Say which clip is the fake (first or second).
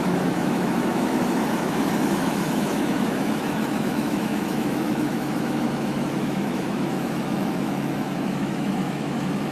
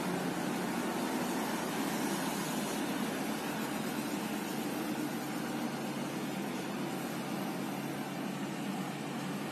first